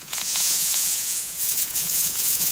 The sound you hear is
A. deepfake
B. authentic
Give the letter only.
A